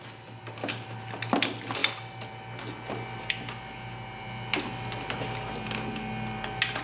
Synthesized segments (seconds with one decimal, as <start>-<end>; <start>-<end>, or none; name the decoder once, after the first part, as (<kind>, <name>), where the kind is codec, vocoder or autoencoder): none